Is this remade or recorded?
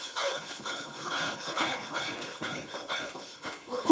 remade